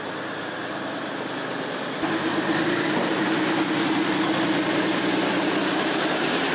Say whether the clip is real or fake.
fake